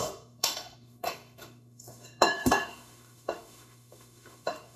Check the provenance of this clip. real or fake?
fake